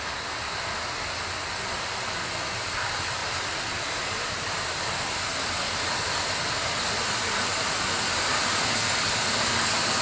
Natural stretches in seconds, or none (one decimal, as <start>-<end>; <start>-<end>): 0.0-10.0